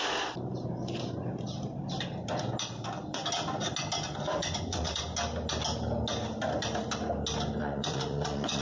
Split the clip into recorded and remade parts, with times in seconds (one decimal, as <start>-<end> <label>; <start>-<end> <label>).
0.0-4.4 recorded; 4.4-5.0 remade; 5.0-7.6 recorded; 7.6-8.6 remade

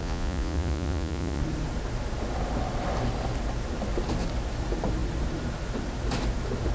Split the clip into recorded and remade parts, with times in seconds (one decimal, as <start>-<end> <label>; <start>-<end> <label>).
0.0-1.4 remade; 1.4-6.7 recorded

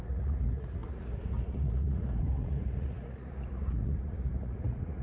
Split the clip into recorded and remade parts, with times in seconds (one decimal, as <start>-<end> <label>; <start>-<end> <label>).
0.0-5.0 remade

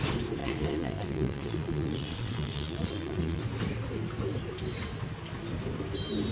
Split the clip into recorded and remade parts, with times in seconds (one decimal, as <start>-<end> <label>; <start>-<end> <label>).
0.0-0.4 recorded; 0.4-3.4 remade; 3.4-6.3 recorded

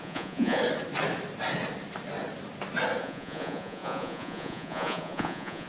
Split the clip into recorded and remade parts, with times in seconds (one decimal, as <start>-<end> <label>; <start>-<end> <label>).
0.0-0.6 remade; 0.6-3.0 recorded; 3.0-5.7 remade

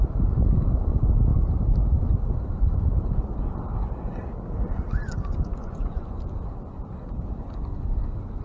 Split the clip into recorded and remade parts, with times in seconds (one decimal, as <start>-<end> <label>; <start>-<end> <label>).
0.0-5.3 recorded; 5.3-6.2 remade; 6.2-8.4 recorded